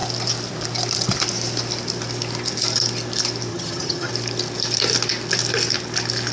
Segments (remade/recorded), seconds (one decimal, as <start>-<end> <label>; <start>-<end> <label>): 0.0-3.5 recorded; 3.5-4.1 remade; 4.1-6.3 recorded